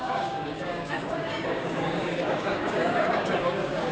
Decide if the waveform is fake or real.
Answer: fake